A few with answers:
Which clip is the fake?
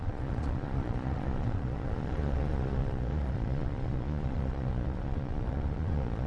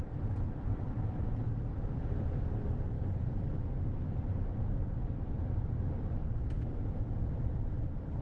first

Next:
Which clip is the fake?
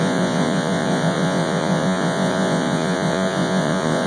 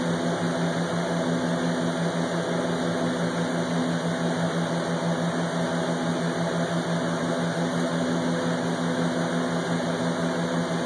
first